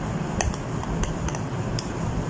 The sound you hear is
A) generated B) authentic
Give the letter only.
B